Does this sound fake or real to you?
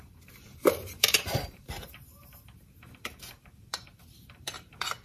fake